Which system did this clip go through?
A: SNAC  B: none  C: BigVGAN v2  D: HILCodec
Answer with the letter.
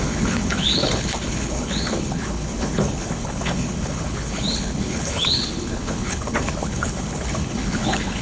D